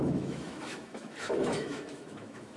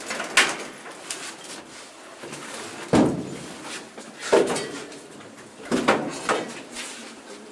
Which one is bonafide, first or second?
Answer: second